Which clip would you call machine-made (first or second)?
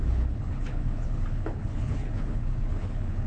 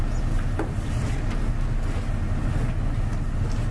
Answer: first